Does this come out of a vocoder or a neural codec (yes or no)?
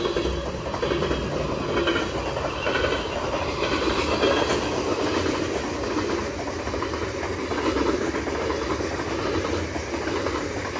no